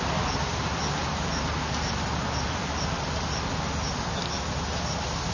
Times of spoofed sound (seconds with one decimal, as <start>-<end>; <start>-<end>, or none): 1.0-4.2